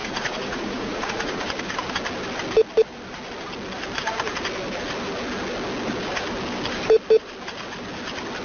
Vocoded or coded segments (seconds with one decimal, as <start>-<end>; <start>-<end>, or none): 0.0-1.4